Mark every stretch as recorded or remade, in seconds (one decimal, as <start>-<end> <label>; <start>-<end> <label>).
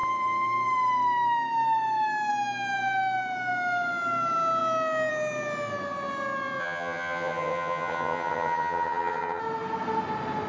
0.0-6.6 recorded; 6.6-9.4 remade; 9.4-10.5 recorded